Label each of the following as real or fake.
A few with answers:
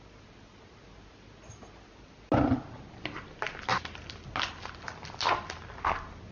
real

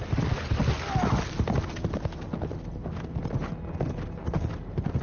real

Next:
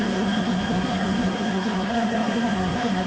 fake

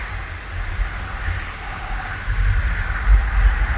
real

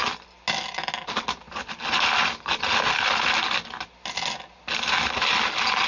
real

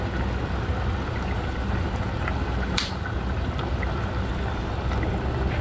real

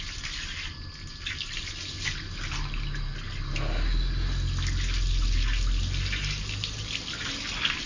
real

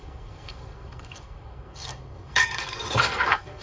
fake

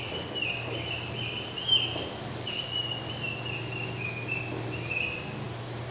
real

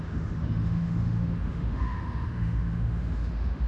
fake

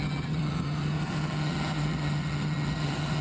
fake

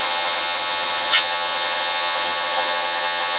fake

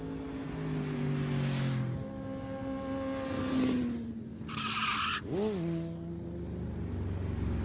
real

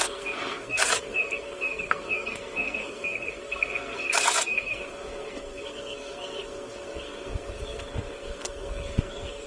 fake